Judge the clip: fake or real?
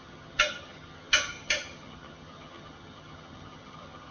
fake